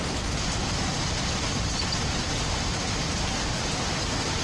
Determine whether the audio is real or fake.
real